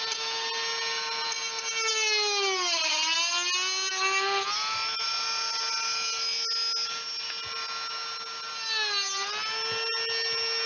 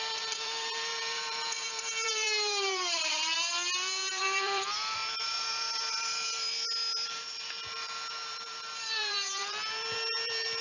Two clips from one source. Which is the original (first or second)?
first